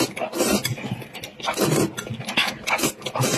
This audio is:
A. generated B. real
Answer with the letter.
B